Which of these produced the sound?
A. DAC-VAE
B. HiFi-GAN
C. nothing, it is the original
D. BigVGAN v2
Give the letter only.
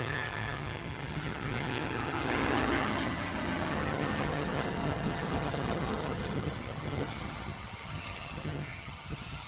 B